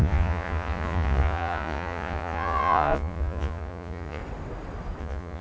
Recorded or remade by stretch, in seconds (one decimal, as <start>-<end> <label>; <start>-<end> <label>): 0.0-4.2 remade; 4.2-5.0 recorded; 5.0-5.4 remade